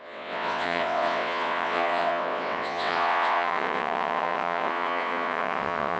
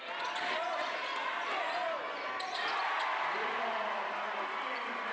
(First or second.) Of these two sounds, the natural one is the second